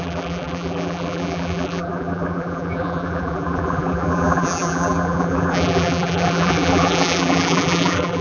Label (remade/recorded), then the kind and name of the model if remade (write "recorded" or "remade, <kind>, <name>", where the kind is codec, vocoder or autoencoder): remade, vocoder, BigVGAN v2